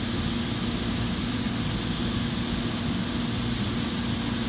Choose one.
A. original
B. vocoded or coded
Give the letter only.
A